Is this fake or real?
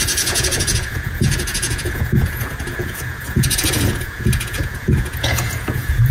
fake